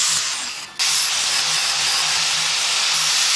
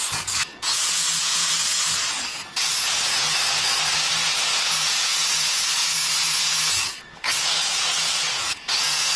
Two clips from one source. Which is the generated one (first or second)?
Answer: second